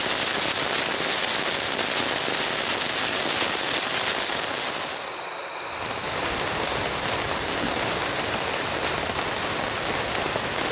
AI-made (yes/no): no